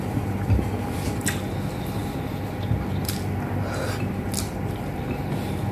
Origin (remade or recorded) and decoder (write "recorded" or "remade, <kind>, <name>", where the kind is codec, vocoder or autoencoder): recorded